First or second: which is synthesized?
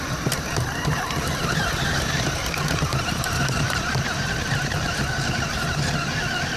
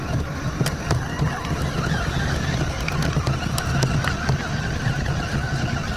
first